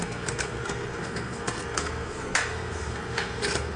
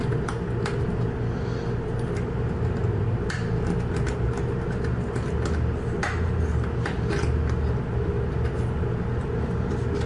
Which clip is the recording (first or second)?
second